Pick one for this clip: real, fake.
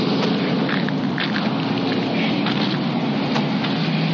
real